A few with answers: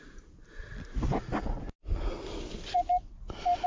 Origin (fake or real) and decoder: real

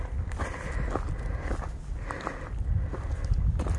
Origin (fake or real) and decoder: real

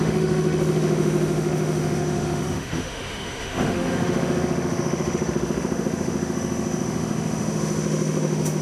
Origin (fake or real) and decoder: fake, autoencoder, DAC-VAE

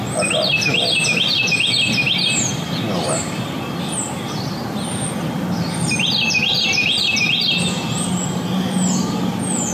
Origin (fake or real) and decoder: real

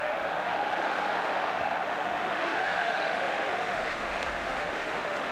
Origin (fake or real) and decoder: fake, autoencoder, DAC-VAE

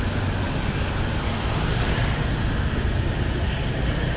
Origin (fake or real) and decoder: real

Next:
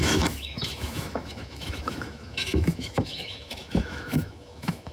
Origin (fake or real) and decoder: fake, autoencoder, DAC-VAE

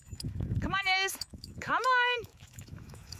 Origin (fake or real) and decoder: fake, autoencoder, DAC-VAE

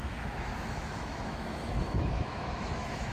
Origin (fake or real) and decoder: fake, autoencoder, DAC-VAE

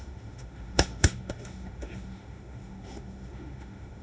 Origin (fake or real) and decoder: fake, autoencoder, DAC-VAE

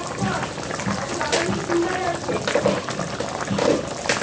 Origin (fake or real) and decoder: real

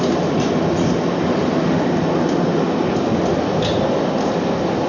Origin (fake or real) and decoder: real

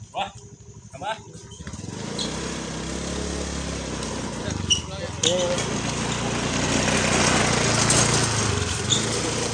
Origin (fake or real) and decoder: real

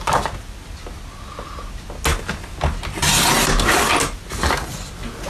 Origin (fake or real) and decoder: real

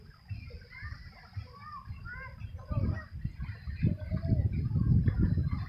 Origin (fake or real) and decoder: real